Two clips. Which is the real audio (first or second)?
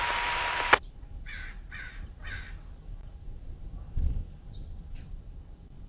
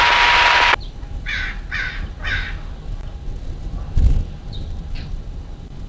second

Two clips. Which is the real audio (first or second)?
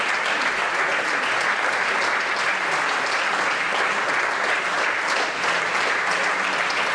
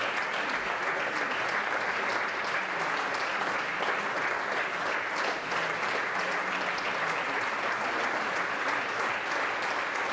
second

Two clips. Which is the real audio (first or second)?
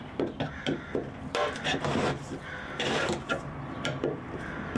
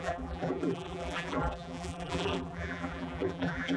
first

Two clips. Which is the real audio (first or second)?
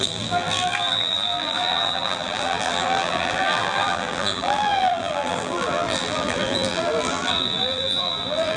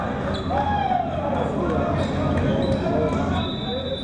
second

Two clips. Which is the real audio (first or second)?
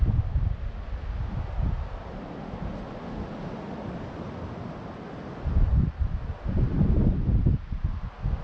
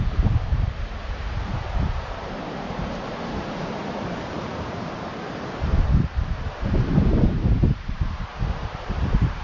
first